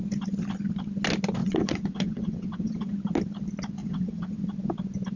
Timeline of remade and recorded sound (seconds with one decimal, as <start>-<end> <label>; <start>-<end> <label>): 0.0-1.4 recorded; 1.4-2.9 remade; 2.9-3.8 recorded; 3.8-4.4 remade; 4.4-5.2 recorded